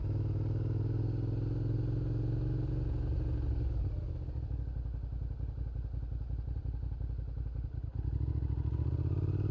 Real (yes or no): yes